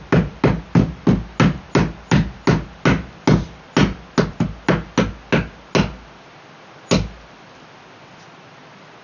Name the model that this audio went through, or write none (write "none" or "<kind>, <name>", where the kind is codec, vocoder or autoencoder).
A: none